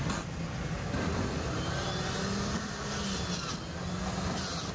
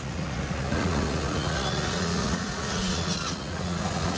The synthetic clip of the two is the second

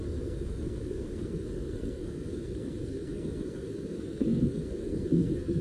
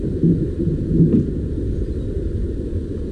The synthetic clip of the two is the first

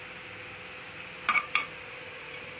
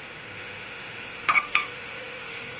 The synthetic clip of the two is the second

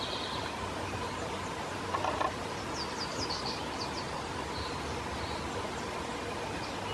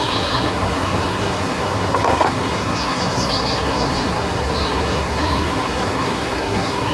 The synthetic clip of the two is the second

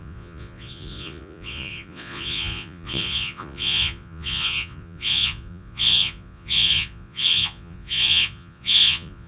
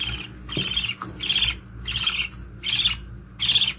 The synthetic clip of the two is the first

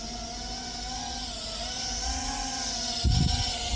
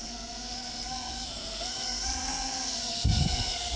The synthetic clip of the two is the second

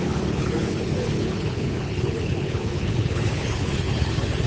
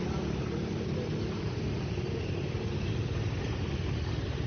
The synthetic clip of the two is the first